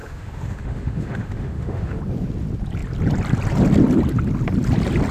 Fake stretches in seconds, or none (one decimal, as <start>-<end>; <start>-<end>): 0.0-2.0